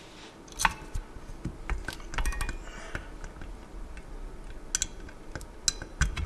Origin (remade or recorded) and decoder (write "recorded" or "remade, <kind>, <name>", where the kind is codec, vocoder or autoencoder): recorded